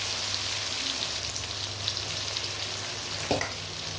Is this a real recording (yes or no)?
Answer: yes